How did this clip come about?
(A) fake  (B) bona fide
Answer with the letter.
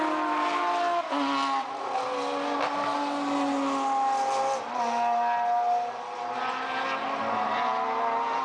B